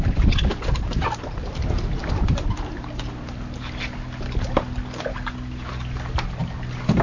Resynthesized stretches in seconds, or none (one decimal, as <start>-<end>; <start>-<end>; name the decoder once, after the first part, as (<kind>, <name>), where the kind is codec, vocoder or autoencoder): none